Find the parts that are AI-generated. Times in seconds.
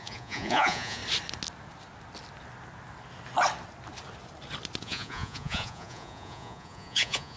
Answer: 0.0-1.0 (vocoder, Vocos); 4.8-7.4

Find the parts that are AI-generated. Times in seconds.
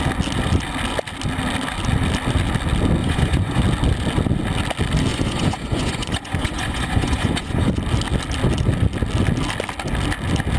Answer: 3.0-3.6 (vocoder, Vocos); 5.1-7.7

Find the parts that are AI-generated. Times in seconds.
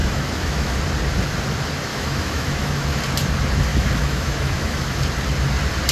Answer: 0.0-0.8 (autoencoder, DAC-VAE); 1.9-3.0; 3.7-5.0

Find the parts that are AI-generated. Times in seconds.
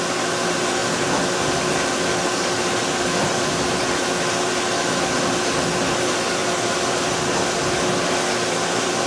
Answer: 6.4-7.1 (vocoder, BigVGAN v2)